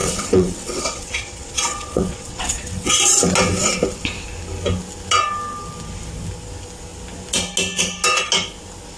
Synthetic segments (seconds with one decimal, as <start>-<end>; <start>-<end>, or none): 0.0-2.9